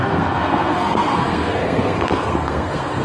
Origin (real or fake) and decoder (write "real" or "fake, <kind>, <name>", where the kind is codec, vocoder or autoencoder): fake, codec, SNAC